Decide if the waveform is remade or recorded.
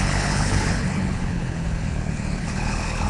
remade